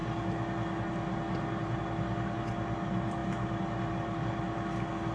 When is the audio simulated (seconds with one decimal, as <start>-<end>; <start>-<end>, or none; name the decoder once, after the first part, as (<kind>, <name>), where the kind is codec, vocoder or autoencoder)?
none